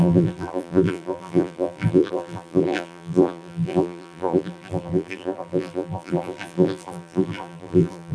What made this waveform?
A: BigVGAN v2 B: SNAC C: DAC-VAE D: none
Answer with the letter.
A